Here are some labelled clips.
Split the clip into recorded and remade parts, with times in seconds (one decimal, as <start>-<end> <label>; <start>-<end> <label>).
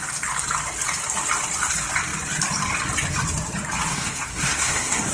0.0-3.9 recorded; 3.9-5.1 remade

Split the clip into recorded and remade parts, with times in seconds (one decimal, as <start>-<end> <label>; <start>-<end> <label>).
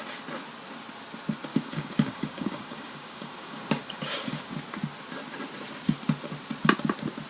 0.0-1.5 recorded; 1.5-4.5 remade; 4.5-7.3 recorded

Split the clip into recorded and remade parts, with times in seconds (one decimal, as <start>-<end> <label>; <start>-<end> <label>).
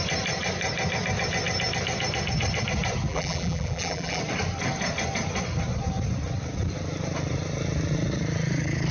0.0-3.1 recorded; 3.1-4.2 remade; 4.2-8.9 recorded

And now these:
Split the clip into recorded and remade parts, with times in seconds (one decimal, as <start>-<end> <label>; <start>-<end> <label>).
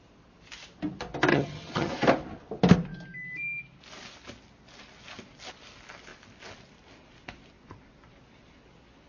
0.0-1.3 recorded; 1.3-1.9 remade; 1.9-9.1 recorded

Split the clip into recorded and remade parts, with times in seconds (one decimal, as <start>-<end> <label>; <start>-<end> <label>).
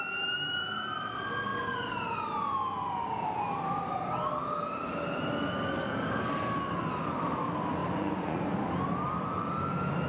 0.0-7.8 recorded; 7.8-8.5 remade; 8.5-10.1 recorded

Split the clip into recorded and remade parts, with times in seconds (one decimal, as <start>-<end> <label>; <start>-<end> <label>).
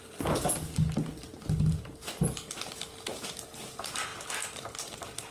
0.0-5.3 recorded